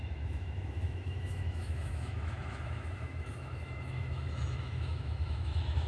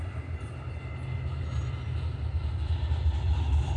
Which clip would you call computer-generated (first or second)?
first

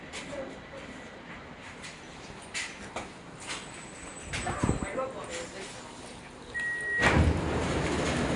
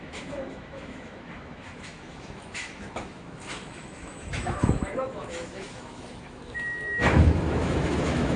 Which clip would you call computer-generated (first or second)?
second